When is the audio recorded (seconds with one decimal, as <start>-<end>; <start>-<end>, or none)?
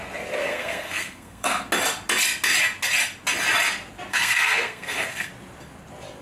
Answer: 0.0-0.4; 1.7-4.1; 5.3-6.2